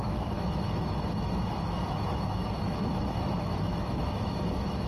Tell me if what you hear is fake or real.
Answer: fake